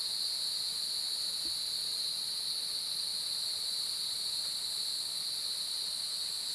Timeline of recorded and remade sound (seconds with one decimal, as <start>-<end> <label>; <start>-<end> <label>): 0.0-3.1 recorded; 3.1-5.0 remade; 5.0-6.5 recorded